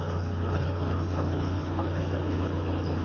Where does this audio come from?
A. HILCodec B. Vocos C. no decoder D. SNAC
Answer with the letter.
A